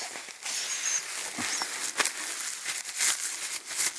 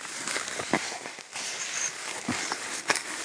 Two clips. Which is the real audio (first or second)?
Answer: first